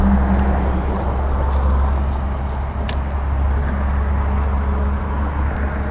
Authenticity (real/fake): real